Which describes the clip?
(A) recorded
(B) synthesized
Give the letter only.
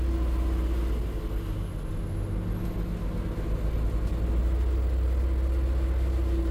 A